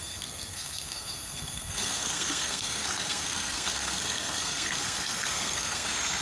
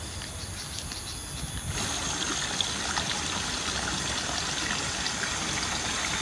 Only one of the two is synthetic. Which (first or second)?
first